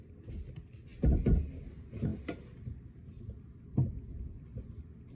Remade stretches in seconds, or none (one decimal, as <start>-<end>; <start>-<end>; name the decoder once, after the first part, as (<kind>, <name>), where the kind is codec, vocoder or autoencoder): none